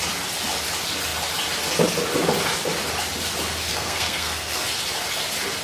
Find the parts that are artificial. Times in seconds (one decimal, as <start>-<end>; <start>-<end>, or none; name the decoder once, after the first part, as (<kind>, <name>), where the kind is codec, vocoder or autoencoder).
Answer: 3.7-4.7 (codec, SNAC)